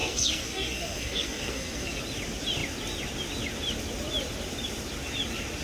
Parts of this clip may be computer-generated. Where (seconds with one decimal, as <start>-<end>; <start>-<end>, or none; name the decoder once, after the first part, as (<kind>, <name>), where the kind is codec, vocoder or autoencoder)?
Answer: 0.0-2.0 (codec, SNAC)